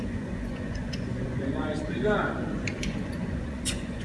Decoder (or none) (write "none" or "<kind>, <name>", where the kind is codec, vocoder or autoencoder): vocoder, Vocos